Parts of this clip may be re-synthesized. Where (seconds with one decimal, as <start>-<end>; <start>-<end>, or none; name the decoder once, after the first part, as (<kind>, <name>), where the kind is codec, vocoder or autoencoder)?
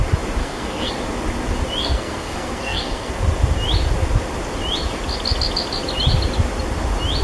0.4-0.9 (codec, SNAC); 1.8-3.1